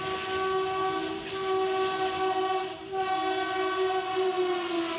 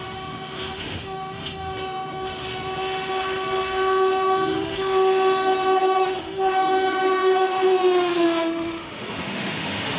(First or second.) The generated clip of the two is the second